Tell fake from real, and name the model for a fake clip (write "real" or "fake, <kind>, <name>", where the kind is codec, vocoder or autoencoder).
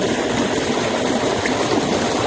real